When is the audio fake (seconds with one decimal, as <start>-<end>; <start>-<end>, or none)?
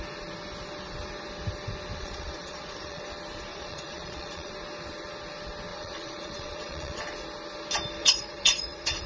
2.0-3.0; 3.5-4.5; 5.7-7.0; 8.0-9.1